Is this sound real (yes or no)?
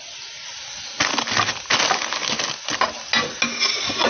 yes